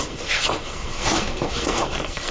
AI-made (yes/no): yes